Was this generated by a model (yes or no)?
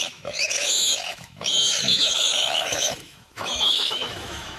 yes